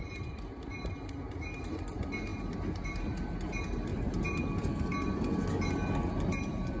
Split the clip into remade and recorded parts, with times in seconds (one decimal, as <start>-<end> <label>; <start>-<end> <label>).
0.0-3.9 recorded; 3.9-4.4 remade; 4.4-6.8 recorded